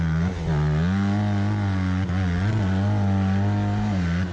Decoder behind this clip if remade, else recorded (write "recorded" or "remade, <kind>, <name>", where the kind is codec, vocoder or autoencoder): recorded